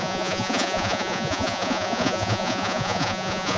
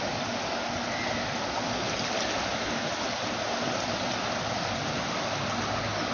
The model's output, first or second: first